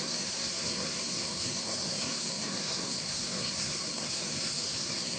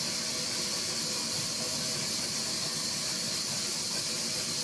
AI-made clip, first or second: first